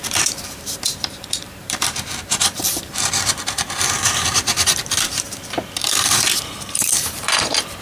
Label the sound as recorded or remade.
remade